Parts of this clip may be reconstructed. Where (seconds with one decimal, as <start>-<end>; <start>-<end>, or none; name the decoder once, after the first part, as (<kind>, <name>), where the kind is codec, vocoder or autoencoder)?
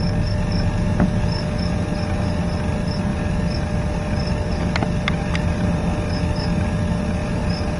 none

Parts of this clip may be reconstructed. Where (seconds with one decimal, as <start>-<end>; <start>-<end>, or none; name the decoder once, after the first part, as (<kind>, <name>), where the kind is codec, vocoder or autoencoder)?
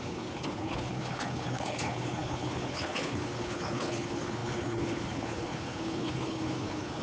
0.0-7.0 (codec, HILCodec)